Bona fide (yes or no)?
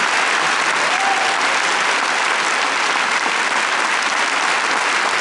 yes